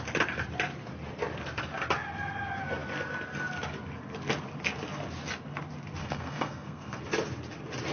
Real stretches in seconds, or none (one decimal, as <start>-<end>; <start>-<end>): 0.0-6.0; 7.0-7.9